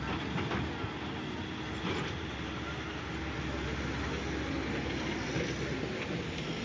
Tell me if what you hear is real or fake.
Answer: real